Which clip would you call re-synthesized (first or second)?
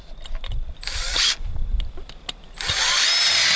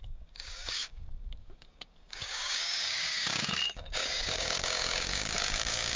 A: second